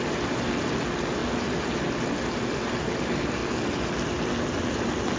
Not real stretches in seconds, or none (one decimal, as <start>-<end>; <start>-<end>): none